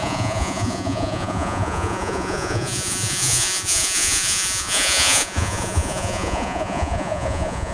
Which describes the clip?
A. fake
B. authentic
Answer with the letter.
A